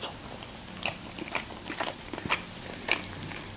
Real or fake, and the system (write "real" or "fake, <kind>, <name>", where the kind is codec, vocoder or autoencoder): real